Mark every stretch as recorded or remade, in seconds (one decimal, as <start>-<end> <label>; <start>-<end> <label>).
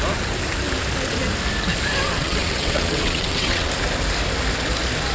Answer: 0.0-2.0 recorded; 2.0-3.7 remade; 3.7-5.1 recorded